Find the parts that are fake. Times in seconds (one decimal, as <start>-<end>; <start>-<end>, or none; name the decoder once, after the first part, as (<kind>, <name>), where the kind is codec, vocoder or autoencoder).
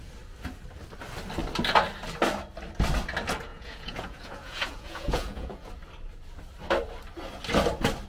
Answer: 3.5-5.7 (vocoder, Vocos)